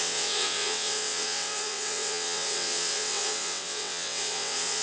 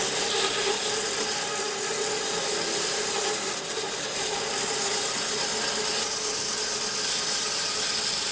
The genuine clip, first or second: second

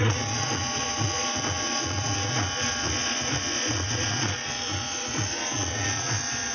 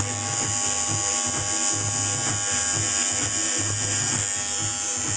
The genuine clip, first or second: second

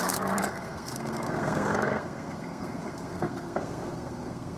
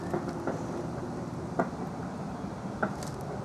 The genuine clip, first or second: second